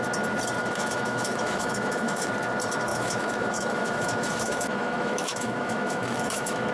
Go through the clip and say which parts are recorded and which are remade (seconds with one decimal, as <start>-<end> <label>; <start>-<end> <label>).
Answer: 0.0-0.6 recorded; 0.6-2.3 remade; 2.3-2.9 recorded; 2.9-6.7 remade